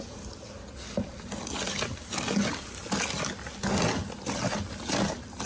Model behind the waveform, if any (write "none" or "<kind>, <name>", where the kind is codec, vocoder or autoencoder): none